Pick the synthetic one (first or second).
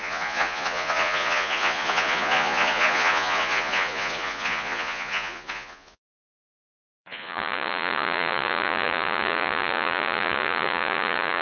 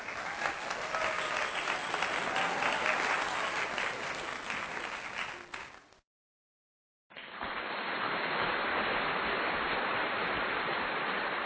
first